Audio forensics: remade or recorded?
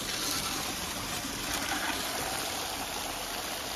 recorded